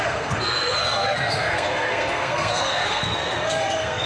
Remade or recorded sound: remade